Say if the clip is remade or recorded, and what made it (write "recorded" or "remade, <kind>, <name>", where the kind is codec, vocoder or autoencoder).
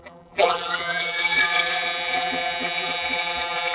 remade, vocoder, BigVGAN v2